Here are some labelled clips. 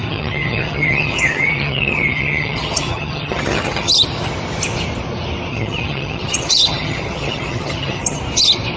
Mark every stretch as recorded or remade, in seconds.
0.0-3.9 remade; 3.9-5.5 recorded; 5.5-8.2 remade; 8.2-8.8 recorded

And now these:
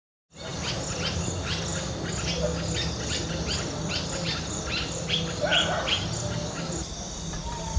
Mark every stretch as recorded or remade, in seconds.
0.0-7.8 recorded

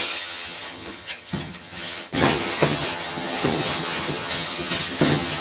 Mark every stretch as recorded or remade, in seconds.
0.0-5.4 remade